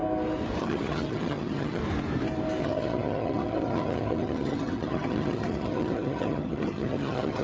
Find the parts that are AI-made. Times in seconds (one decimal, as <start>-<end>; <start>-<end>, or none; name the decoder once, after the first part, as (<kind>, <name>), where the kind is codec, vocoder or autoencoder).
0.6-1.8 (vocoder, HiFi-GAN); 2.6-7.4